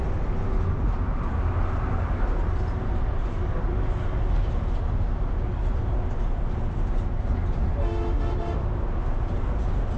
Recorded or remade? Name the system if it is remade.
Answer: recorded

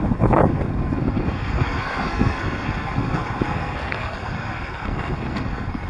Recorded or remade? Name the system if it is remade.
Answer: remade, codec, SNAC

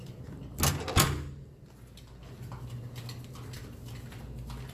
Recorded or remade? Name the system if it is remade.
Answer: recorded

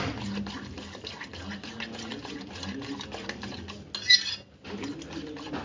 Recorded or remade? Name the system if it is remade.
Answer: recorded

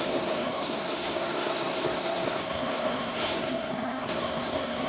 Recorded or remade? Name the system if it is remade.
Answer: remade, codec, SNAC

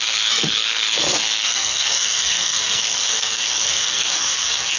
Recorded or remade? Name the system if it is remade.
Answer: remade, codec, SNAC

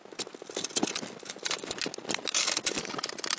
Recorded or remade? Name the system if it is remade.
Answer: recorded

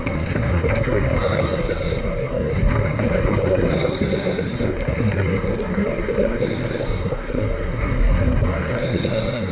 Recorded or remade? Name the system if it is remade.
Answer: remade, codec, SNAC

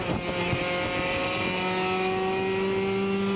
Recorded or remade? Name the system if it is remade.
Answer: recorded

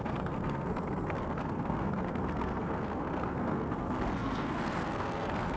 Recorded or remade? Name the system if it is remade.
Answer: remade, codec, SNAC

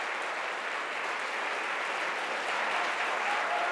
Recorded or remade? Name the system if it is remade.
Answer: recorded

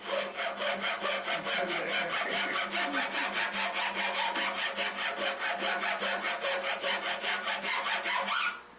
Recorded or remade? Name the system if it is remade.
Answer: recorded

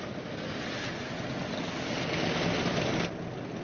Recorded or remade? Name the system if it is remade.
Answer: recorded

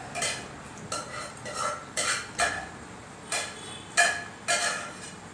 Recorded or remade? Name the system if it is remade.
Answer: recorded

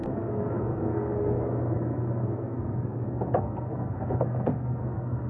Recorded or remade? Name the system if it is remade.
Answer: remade, codec, SNAC